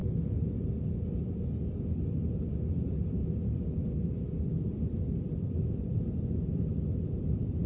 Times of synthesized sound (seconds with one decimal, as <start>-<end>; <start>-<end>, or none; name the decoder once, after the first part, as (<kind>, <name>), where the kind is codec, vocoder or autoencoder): 4.0-6.7 (vocoder, BigVGAN v2); 7.2-7.7